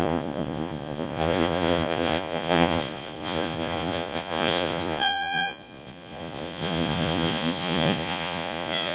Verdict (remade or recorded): remade